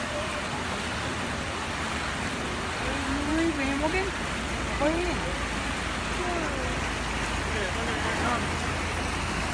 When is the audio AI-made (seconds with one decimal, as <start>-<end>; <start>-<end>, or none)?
none